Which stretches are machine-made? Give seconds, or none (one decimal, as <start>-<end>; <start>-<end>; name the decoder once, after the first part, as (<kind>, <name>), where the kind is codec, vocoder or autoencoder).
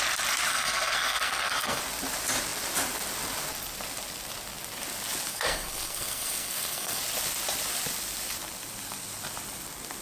0.5-1.8 (codec, SNAC); 5.3-7.0